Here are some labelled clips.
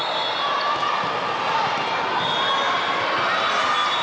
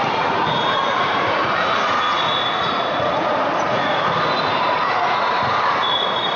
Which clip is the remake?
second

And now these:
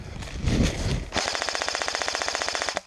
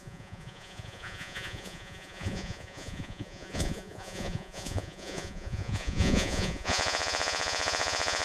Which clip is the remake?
second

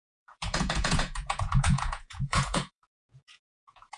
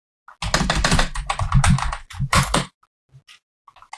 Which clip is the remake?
first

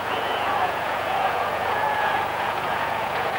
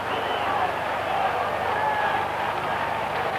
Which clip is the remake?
first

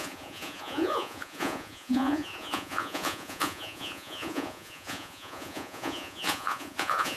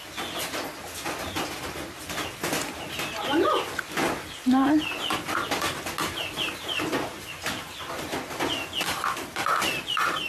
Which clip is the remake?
first